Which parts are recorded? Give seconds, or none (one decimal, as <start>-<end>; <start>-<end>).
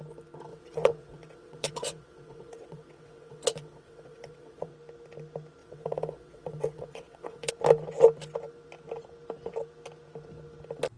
0.0-0.5; 4.7-5.6; 7.5-11.0